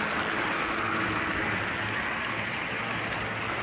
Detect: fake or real real